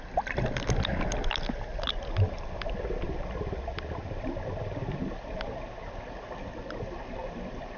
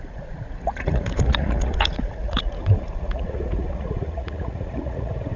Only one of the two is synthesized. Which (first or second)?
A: second